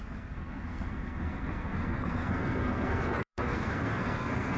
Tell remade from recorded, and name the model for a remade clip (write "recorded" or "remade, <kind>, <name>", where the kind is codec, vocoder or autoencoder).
remade, codec, SNAC